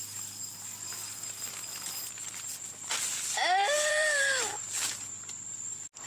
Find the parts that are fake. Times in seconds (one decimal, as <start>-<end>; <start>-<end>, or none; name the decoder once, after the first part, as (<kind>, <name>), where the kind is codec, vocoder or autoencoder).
0.9-4.6 (vocoder, BigVGAN v2)